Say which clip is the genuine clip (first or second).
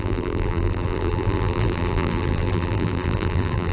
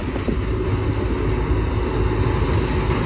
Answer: second